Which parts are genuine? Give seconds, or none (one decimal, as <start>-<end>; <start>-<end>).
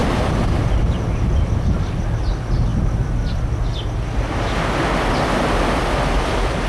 0.0-6.7